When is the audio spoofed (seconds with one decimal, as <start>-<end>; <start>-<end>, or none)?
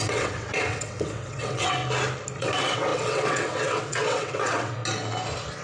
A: 0.0-1.8; 2.4-4.8